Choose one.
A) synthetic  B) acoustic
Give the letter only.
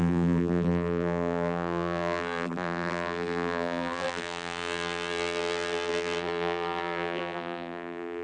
A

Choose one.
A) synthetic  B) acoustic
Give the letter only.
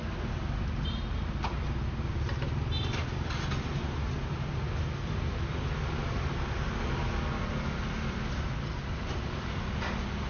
B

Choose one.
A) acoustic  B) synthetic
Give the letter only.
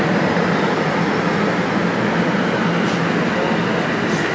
A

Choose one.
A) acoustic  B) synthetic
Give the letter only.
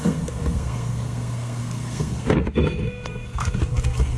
B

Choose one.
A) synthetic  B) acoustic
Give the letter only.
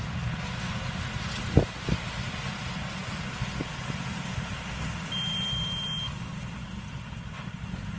B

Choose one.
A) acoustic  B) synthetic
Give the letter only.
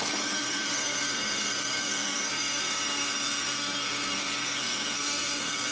B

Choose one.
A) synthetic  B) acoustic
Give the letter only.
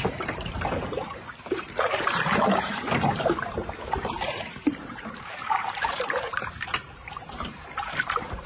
A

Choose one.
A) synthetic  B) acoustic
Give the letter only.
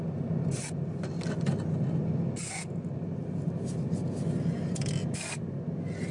B